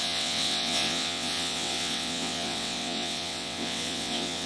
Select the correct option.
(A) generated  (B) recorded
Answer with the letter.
A